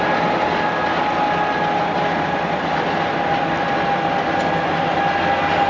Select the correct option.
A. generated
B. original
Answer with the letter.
B